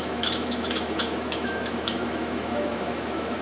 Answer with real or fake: fake